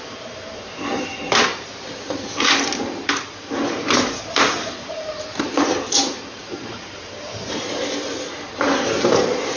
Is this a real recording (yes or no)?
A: no